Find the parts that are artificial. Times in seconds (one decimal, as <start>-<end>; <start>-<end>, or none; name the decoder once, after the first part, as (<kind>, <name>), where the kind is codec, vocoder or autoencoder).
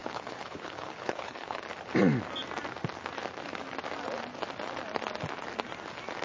0.0-1.7 (codec, HILCodec)